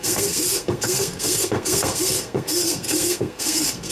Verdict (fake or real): fake